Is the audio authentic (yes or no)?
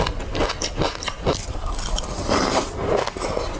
yes